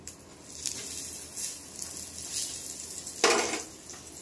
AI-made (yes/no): no